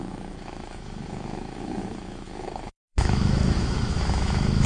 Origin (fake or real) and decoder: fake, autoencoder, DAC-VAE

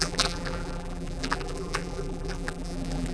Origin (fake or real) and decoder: fake, vocoder, BigVGAN v2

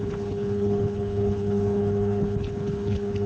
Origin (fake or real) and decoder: fake, codec, HILCodec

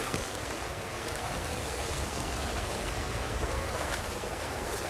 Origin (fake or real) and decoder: fake, codec, SNAC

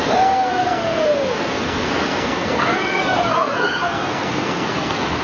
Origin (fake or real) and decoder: fake, codec, SNAC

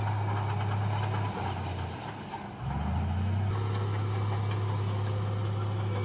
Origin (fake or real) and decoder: real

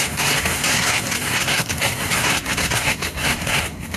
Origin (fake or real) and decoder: fake, codec, SNAC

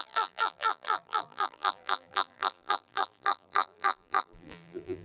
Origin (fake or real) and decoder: fake, vocoder, BigVGAN v2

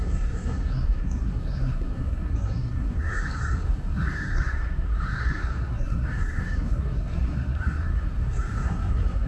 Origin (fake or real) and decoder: fake, codec, SNAC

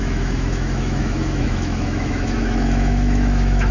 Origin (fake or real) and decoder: fake, autoencoder, DAC-VAE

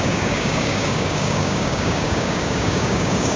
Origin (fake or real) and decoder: fake, codec, DAC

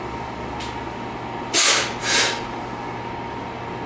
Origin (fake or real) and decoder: real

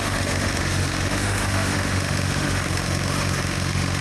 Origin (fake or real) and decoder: fake, autoencoder, DAC-VAE